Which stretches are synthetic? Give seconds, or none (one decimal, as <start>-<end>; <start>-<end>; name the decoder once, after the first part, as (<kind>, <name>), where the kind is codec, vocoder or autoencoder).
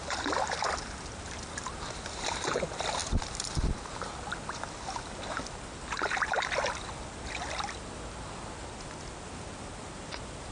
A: none